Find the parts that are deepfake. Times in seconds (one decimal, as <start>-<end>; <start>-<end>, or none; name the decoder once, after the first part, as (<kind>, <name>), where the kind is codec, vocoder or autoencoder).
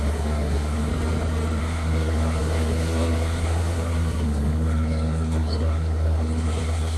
0.0-0.9 (codec, SNAC); 1.6-7.0